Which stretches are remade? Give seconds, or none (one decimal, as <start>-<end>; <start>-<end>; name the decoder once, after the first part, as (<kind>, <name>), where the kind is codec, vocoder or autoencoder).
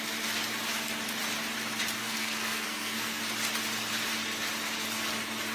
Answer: 2.0-3.2 (codec, SNAC)